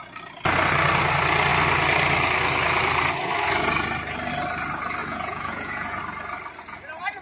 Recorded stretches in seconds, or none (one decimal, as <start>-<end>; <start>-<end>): 0.0-5.0; 6.0-7.2